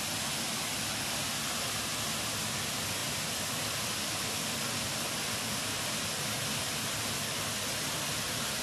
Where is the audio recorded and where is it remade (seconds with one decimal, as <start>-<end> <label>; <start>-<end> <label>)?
0.0-8.6 recorded